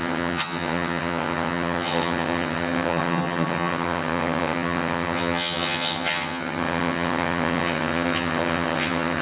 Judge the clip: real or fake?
fake